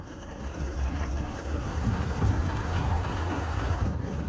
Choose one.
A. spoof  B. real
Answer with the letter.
A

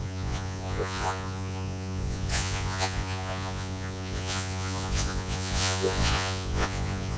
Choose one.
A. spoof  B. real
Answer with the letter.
A